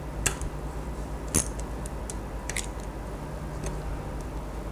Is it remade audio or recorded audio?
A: recorded